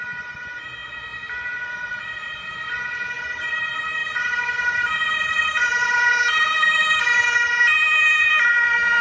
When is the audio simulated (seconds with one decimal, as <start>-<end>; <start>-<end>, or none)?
4.0-7.6